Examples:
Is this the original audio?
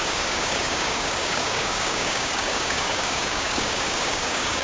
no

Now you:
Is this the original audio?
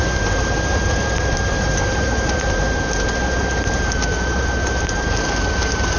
no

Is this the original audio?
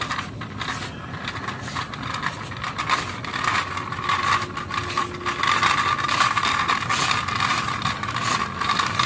no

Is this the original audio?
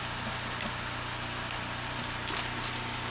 yes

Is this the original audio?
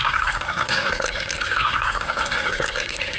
no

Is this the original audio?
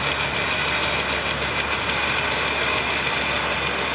yes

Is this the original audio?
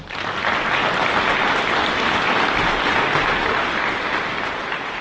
yes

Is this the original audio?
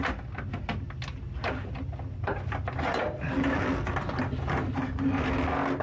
yes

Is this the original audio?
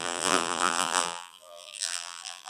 no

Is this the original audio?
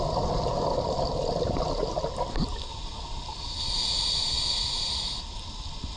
yes